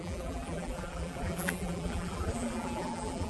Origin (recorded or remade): remade